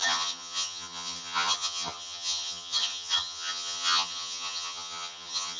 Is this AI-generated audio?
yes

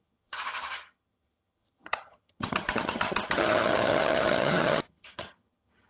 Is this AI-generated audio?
yes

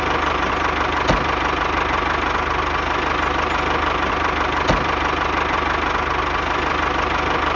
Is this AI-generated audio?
no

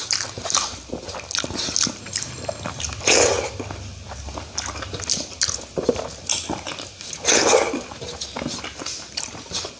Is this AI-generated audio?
no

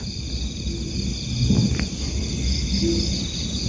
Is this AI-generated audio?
no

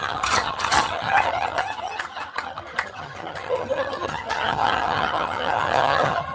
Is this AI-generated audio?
yes